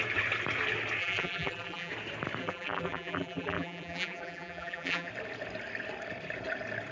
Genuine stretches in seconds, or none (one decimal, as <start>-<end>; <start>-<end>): 0.0-1.0; 1.9-2.4; 5.1-6.9